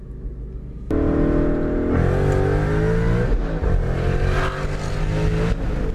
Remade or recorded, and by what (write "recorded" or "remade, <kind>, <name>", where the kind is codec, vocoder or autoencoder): recorded